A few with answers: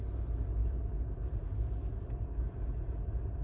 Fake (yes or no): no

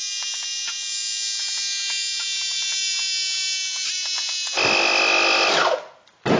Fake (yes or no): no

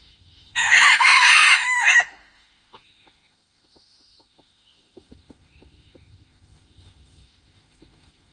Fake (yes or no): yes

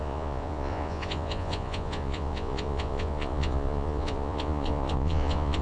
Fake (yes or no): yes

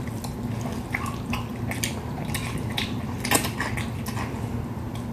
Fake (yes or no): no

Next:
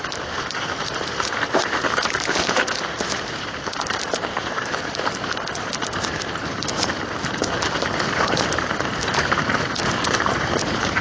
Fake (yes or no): yes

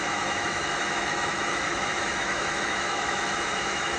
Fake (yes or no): yes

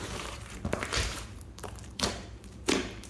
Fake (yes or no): yes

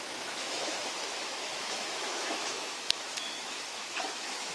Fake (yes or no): yes